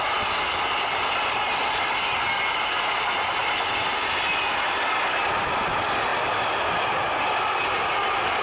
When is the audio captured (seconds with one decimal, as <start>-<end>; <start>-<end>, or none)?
0.0-8.4